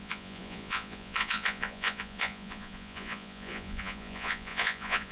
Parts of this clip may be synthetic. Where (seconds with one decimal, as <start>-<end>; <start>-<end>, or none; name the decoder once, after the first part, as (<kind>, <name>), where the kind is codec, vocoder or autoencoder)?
0.0-5.1 (vocoder, Vocos)